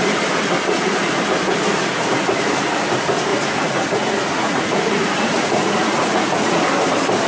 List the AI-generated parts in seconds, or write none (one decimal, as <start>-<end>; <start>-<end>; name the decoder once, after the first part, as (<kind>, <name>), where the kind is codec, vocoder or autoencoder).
3.3-6.6 (vocoder, Vocos)